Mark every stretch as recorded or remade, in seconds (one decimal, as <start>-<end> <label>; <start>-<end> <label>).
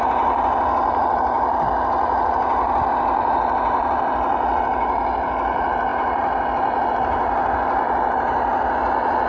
0.0-9.3 recorded